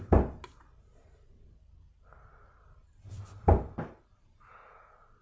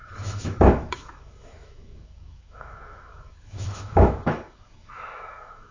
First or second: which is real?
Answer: first